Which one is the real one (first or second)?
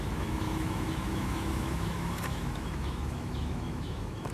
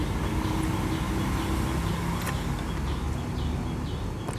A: second